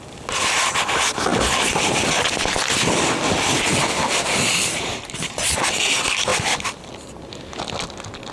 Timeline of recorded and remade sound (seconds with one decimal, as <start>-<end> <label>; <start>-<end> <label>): 0.0-8.3 recorded